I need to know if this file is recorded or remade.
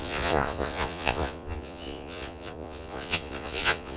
remade